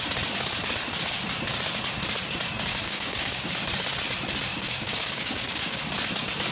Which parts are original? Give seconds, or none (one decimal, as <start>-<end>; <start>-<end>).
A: 0.0-2.7; 3.5-4.5; 5.8-6.5